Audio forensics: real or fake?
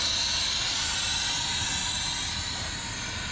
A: real